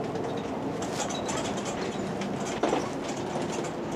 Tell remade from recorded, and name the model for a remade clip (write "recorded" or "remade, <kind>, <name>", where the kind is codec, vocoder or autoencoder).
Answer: recorded